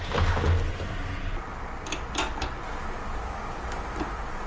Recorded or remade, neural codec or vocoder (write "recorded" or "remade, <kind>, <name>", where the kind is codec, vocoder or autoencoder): recorded